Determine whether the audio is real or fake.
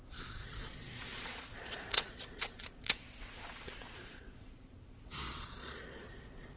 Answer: fake